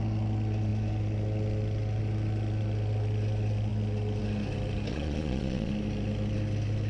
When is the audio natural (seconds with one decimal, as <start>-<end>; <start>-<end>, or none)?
0.0-4.9; 5.7-6.9